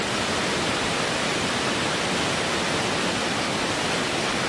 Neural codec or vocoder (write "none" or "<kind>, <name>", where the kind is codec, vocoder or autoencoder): none